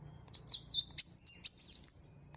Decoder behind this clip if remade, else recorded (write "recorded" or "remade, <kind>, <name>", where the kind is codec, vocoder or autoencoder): recorded